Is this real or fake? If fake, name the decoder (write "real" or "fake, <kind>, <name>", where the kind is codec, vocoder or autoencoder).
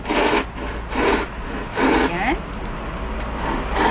real